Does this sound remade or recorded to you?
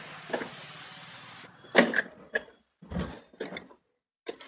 recorded